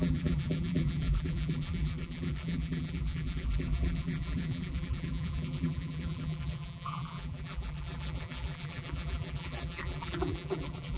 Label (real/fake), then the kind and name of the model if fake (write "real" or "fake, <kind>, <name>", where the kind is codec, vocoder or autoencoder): fake, vocoder, BigVGAN v2